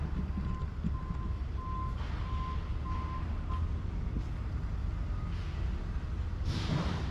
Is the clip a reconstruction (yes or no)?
no